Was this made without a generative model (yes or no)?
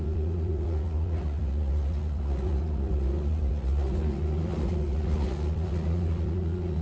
no